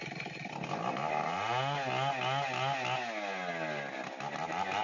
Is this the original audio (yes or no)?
yes